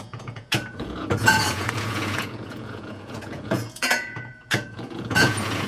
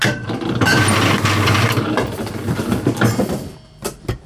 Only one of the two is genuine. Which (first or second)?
second